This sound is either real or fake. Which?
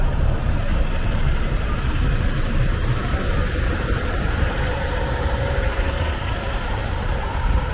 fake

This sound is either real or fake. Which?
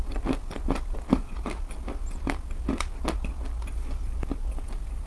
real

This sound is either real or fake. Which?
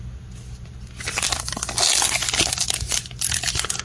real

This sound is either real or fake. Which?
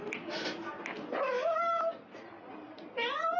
real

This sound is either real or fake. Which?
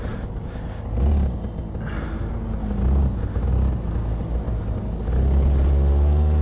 real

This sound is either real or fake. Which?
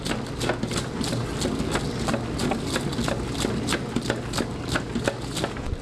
real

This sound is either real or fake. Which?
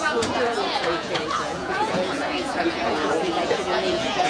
fake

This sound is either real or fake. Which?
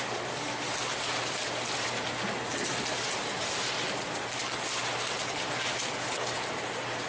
real